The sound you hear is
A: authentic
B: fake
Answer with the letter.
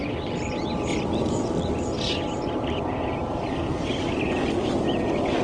A